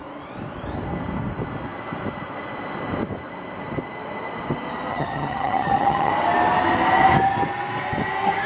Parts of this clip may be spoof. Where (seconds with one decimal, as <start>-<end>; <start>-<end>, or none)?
4.9-6.1